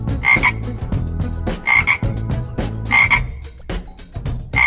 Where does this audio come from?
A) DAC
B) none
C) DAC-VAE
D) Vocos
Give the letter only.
B